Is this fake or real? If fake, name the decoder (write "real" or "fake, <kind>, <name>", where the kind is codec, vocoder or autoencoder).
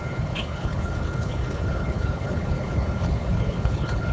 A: fake, codec, HILCodec